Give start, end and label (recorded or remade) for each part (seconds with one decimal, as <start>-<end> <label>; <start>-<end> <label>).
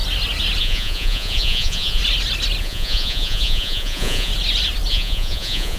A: 0.0-0.6 recorded; 0.6-2.0 remade; 2.0-2.6 recorded; 2.6-4.3 remade; 4.3-4.9 recorded; 4.9-5.8 remade